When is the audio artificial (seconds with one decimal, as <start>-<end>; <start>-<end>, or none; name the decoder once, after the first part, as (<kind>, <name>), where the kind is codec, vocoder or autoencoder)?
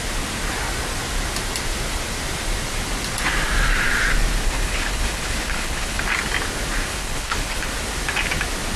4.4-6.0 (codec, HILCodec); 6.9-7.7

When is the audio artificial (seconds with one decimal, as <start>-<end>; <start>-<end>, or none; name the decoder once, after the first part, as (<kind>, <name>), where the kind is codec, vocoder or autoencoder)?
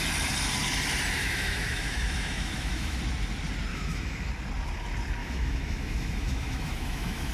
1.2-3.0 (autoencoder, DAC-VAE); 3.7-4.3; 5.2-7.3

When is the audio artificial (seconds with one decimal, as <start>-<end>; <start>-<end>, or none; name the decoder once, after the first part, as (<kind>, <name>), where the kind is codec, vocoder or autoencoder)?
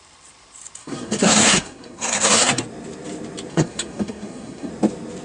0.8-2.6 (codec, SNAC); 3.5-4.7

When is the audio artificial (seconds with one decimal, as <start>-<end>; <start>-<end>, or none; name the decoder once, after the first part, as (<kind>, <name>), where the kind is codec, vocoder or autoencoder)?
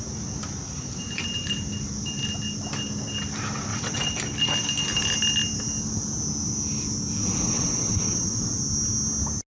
3.7-4.2 (vocoder, WaveNeXt); 7.2-8.6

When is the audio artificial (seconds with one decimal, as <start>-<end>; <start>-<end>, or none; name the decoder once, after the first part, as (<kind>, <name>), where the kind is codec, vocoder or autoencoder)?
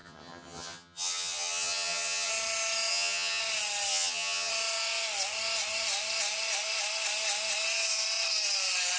0.0-2.3 (vocoder, HiFi-GAN); 2.9-3.4; 3.9-4.5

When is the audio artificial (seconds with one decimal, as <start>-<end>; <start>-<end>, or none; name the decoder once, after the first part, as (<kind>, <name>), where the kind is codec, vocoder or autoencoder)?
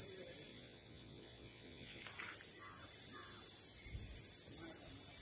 0.5-2.0 (vocoder, Vocos)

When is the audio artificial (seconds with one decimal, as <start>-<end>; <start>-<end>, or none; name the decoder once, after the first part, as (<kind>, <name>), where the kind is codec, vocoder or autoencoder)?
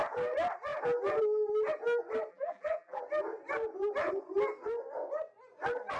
2.3-3.0 (vocoder, BigVGAN v2)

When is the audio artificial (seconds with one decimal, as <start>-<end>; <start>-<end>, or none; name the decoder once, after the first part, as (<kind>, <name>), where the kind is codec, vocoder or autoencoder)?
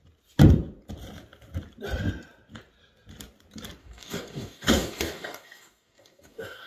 3.8-6.7 (codec, DAC)